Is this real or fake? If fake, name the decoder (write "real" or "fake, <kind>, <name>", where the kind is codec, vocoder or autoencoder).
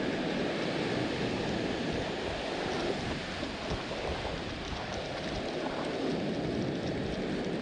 real